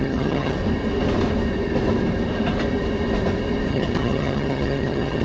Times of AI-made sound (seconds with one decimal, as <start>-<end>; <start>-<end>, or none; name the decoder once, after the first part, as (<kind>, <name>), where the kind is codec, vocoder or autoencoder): 0.0-0.6 (vocoder, HiFi-GAN); 3.7-5.2